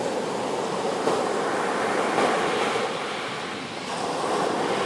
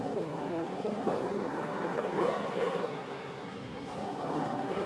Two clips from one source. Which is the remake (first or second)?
second